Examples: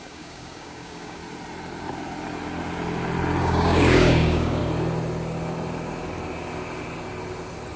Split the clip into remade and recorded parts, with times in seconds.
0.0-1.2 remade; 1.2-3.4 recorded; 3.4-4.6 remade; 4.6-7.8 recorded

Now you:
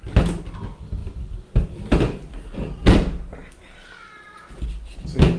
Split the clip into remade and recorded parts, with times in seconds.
0.0-1.0 recorded; 1.0-4.1 remade; 4.1-5.4 recorded

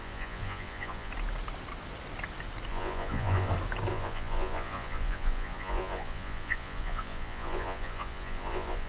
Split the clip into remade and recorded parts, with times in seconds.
0.0-1.1 remade; 1.1-2.7 recorded; 2.7-3.5 remade; 3.5-3.9 recorded; 3.9-8.9 remade

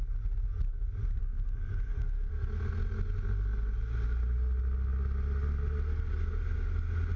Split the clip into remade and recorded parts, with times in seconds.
0.0-1.2 recorded; 1.2-2.3 remade; 2.3-7.2 recorded

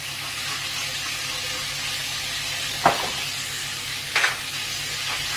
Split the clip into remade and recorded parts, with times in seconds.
0.0-5.4 recorded

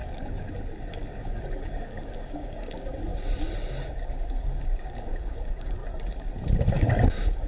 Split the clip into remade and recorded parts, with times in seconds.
0.0-3.1 remade; 3.1-3.8 recorded; 3.8-5.8 remade; 5.8-7.1 recorded; 7.1-7.5 remade